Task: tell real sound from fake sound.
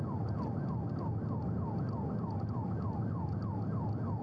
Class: real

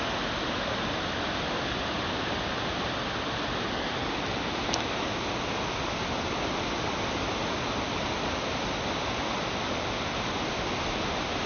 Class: real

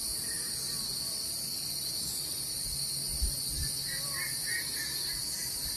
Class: real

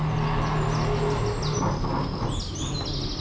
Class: real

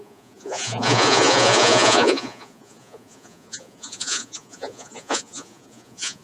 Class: fake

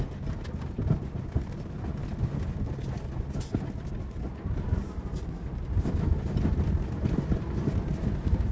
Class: real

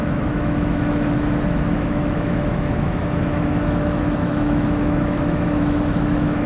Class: fake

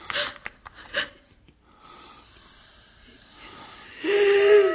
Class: real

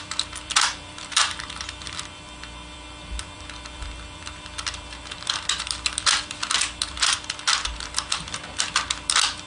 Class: fake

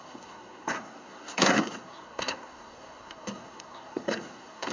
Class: fake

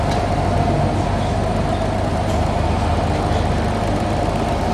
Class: real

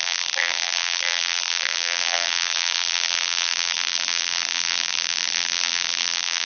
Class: fake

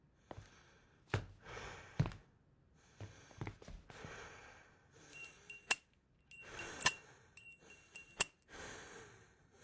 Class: real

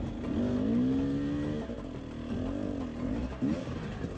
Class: real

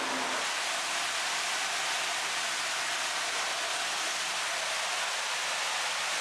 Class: real